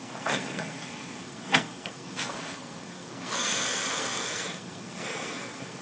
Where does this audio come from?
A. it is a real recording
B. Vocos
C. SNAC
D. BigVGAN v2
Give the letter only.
C